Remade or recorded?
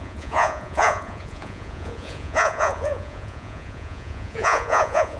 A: remade